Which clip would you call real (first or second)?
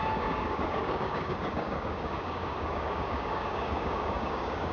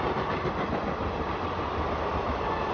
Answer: second